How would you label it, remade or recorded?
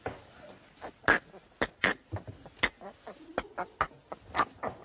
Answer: recorded